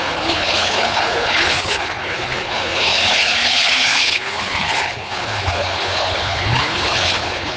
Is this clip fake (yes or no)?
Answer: yes